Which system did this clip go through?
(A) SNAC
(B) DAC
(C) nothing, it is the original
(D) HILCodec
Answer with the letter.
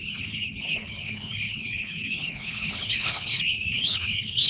D